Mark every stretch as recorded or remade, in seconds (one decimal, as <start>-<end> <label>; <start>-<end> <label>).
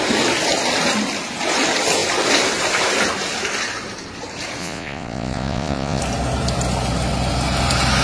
0.0-4.6 recorded; 4.6-6.0 remade; 6.0-8.0 recorded